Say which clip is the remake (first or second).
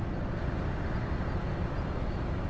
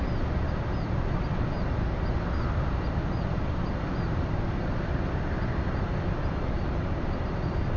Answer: second